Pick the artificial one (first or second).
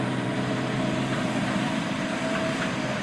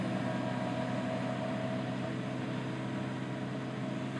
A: first